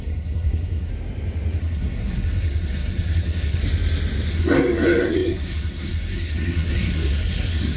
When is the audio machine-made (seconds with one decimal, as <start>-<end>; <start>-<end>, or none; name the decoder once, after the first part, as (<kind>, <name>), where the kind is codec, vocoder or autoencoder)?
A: 0.0-0.9 (codec, SNAC); 1.6-3.6; 4.3-7.8